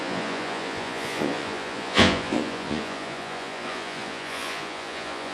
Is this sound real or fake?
fake